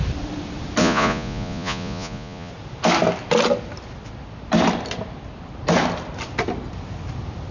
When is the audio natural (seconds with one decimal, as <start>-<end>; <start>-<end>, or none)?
0.0-0.8; 2.5-7.5